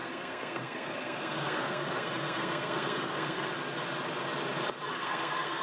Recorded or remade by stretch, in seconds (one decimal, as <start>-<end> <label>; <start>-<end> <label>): 0.0-3.5 remade; 3.5-4.9 recorded; 4.9-5.6 remade